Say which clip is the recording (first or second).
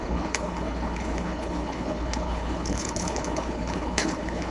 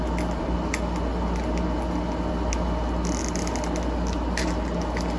second